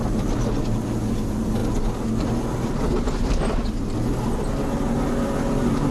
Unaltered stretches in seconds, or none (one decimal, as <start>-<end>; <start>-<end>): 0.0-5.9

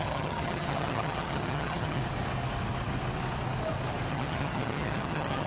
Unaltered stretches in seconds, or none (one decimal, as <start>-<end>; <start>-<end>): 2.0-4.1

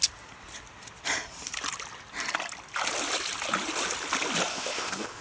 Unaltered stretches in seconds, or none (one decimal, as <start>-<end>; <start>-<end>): 0.0-4.5

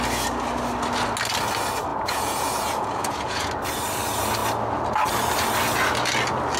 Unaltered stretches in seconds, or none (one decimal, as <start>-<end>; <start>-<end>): 0.0-1.9; 3.5-6.6

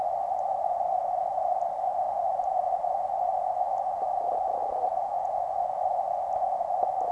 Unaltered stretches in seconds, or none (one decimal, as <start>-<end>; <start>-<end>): 0.0-4.6; 6.0-7.1

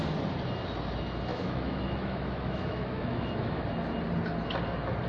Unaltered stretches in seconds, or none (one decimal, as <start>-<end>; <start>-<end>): 0.0-1.3; 3.6-5.1

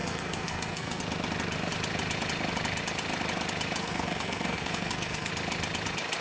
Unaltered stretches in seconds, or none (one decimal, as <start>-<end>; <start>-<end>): 1.0-3.8; 5.3-6.2